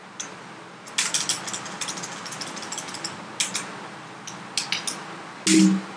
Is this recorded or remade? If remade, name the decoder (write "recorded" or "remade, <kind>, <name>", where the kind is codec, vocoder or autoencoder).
recorded